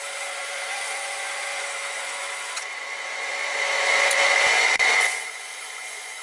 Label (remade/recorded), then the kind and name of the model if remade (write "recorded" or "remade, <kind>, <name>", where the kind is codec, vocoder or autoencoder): remade, vocoder, Vocos